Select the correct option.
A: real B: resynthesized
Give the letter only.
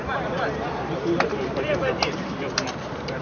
B